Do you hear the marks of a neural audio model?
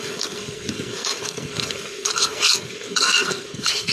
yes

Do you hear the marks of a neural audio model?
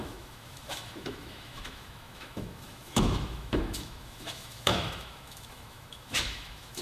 yes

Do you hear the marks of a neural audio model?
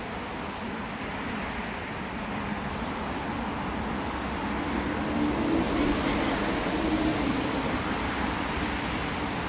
no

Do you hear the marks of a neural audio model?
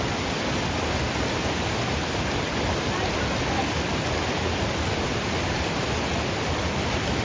no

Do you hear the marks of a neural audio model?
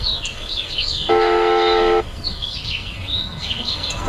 yes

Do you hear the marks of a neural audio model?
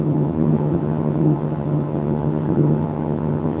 yes